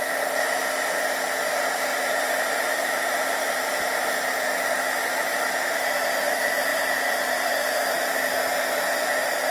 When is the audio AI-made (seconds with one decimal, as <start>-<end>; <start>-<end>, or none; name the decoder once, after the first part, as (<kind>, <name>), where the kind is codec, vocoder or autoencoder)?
1.9-4.3 (vocoder, BigVGAN v2); 6.7-8.0